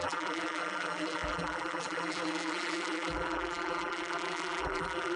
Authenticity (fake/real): fake